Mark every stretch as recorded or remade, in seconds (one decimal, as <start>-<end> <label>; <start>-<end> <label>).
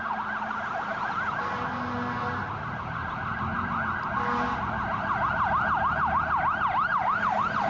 0.0-7.7 recorded